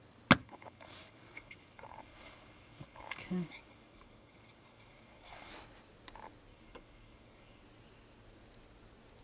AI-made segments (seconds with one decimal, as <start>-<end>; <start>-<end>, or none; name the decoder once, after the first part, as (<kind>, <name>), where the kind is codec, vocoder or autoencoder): 0.4-5.5 (codec, DAC); 6.5-7.6